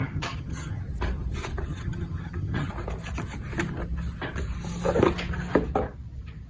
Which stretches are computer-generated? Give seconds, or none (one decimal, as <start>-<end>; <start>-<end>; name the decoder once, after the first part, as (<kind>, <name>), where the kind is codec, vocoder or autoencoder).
0.0-0.8 (vocoder, HiFi-GAN); 1.7-2.7